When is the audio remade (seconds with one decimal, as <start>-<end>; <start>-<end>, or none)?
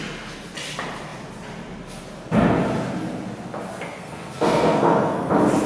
3.7-5.3